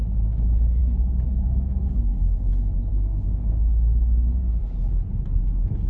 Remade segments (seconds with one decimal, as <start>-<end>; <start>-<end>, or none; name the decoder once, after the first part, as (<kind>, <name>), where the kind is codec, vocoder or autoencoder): 0.0-5.9 (codec, HILCodec)